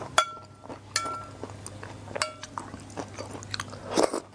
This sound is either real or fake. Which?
real